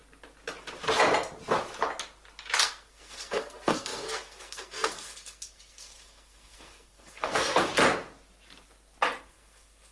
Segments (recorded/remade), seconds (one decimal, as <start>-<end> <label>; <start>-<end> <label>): 0.0-2.6 recorded; 2.6-7.7 remade; 7.7-9.2 recorded; 9.2-9.9 remade